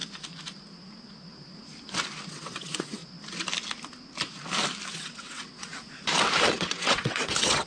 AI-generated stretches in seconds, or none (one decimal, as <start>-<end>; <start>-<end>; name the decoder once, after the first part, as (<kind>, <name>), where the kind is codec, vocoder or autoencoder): 2.3-3.0 (vocoder, WaveNeXt); 4.9-5.7; 6.4-7.7